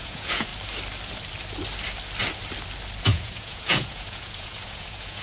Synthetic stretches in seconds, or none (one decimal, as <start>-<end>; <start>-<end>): 0.0-0.5; 3.0-5.2